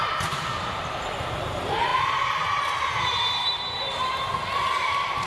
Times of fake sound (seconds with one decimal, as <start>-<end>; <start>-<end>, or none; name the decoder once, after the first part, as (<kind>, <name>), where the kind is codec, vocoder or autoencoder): 0.0-5.3 (vocoder, BigVGAN v2)

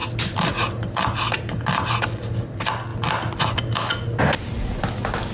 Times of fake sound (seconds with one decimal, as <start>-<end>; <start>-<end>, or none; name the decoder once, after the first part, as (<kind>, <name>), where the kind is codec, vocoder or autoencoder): none

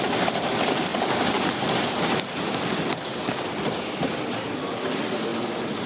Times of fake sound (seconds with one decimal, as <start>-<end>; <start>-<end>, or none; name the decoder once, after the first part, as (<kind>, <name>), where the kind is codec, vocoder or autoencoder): none

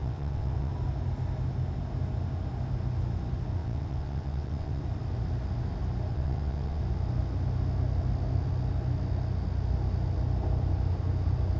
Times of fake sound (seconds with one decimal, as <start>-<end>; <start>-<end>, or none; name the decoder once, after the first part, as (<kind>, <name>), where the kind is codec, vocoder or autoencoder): 0.0-0.7 (vocoder, WaveNeXt); 3.6-4.8; 6.1-6.8